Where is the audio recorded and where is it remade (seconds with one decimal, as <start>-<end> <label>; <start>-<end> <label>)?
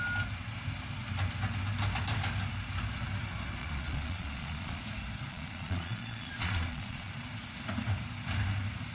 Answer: 0.0-3.6 recorded; 3.6-4.8 remade; 4.8-5.3 recorded; 5.3-7.1 remade; 7.1-8.9 recorded